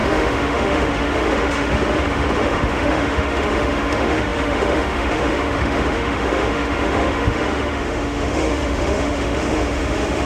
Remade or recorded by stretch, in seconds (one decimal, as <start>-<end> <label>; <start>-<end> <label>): 0.0-10.3 remade